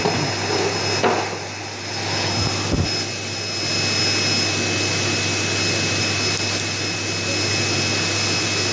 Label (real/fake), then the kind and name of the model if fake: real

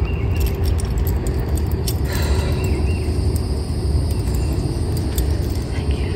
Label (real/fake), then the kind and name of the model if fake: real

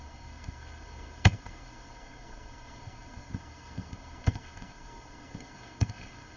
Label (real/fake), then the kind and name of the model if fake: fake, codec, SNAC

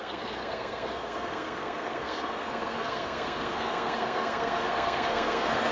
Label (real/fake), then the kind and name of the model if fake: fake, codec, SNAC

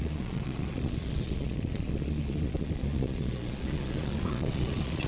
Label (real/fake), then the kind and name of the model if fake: fake, vocoder, Vocos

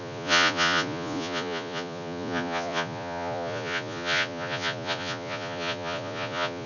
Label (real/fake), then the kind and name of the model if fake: fake, vocoder, Vocos